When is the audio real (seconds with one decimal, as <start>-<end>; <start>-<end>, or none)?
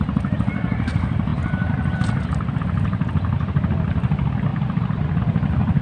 0.0-5.8